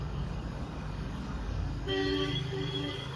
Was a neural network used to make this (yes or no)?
yes